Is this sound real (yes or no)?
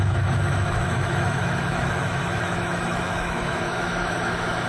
no